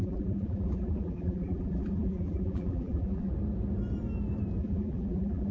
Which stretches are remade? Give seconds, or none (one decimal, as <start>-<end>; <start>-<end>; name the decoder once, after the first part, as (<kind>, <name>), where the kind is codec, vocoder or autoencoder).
0.0-3.3 (vocoder, BigVGAN v2); 4.6-5.5

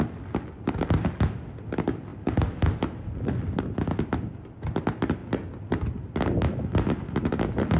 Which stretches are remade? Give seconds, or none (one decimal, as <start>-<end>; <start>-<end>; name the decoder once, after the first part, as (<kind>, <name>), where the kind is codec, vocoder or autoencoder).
none